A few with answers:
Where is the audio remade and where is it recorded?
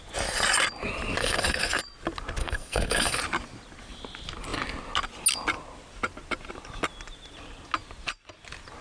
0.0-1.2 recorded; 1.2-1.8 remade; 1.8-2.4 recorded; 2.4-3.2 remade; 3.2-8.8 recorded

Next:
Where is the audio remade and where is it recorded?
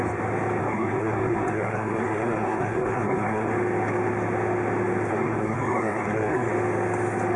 0.0-0.6 recorded; 0.6-3.5 remade; 3.5-5.1 recorded; 5.1-6.5 remade; 6.5-7.4 recorded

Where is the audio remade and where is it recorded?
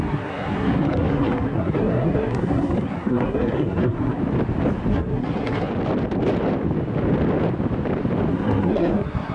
0.0-4.2 remade; 4.2-4.9 recorded; 4.9-5.7 remade; 5.7-8.3 recorded; 8.3-9.3 remade